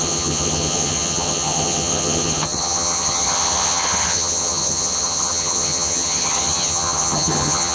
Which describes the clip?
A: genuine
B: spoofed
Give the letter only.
B